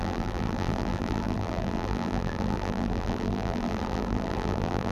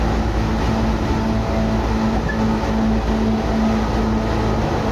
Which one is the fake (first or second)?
first